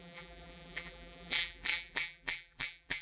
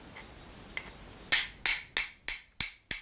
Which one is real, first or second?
second